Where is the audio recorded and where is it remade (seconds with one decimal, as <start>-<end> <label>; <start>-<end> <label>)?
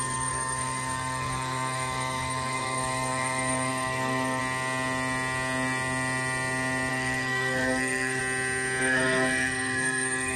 0.0-4.4 remade; 4.4-6.9 recorded; 6.9-8.2 remade; 8.2-8.8 recorded; 8.8-10.4 remade